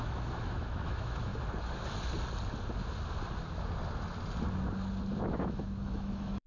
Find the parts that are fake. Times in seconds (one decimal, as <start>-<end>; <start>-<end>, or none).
0.0-1.3; 5.2-6.5